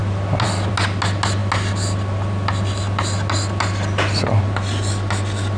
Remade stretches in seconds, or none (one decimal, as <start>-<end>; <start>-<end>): none

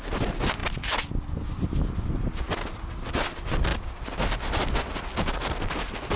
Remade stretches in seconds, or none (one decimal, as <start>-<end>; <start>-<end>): none

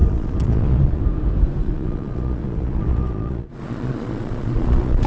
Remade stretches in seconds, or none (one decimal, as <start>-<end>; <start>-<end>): 0.0-1.0; 1.6-5.1

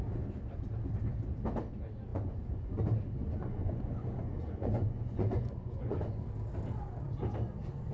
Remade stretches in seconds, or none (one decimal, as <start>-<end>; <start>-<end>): 2.1-2.8; 3.2-6.0